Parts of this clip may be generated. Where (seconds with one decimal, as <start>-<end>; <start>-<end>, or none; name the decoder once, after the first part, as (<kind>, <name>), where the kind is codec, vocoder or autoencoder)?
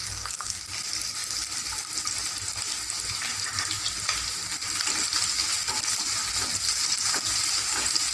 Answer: 0.0-0.6 (codec, SNAC)